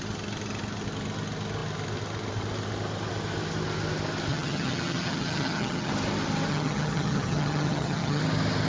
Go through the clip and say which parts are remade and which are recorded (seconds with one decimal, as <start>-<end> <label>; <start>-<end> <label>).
0.0-4.3 recorded; 4.3-5.9 remade; 5.9-6.5 recorded; 6.5-8.2 remade; 8.2-8.7 recorded